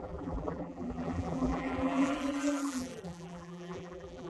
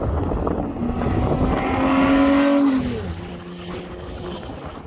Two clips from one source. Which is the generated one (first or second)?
first